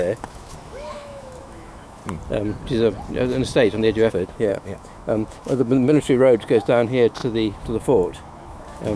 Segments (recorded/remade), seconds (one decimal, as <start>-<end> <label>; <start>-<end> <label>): 0.0-2.0 remade; 2.0-4.1 recorded; 4.1-9.0 remade